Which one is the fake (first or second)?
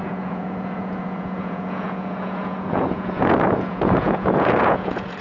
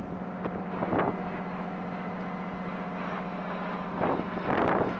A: first